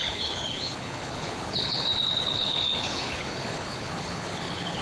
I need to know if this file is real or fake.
fake